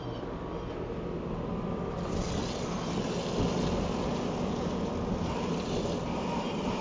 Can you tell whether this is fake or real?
real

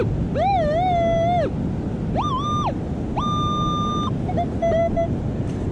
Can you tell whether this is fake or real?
real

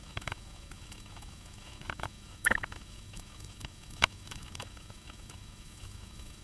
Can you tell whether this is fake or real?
fake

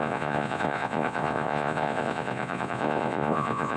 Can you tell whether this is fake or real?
fake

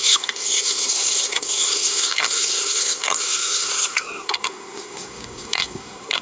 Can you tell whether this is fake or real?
fake